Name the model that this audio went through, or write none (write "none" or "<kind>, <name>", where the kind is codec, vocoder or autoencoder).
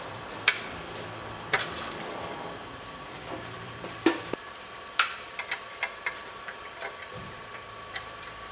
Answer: vocoder, BigVGAN v2